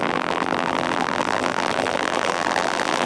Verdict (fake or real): fake